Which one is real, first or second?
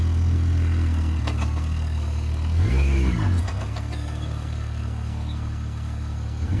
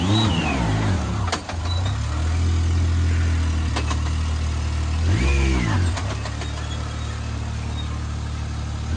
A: second